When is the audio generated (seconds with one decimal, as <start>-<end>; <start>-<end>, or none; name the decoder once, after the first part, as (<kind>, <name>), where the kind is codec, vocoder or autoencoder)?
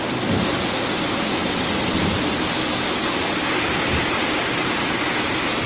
none